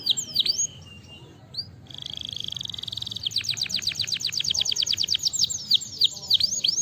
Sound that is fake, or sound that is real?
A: real